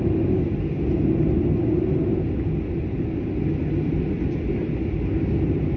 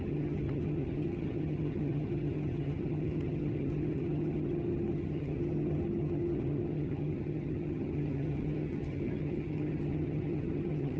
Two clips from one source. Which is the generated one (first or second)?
second